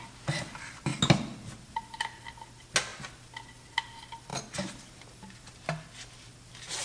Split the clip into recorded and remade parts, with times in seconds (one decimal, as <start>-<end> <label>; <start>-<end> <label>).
0.0-6.8 recorded